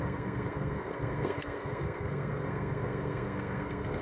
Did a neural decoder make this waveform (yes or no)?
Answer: yes